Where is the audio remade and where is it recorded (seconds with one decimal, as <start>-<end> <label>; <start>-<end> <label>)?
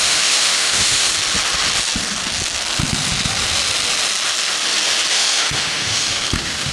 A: 0.0-1.1 remade; 1.1-5.1 recorded; 5.1-6.7 remade